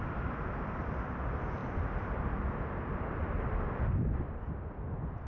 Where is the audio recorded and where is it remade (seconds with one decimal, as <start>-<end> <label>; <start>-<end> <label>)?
0.0-5.3 recorded